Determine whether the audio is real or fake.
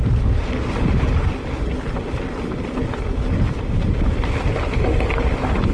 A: real